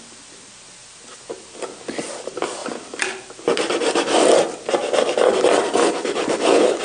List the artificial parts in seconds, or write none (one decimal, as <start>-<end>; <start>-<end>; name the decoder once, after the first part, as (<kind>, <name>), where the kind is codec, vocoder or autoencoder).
5.8-6.8 (codec, HILCodec)